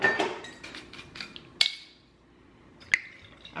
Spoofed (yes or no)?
no